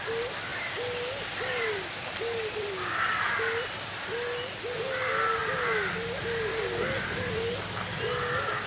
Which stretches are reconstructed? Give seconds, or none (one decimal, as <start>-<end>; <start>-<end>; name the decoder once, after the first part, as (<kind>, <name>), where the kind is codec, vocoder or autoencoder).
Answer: none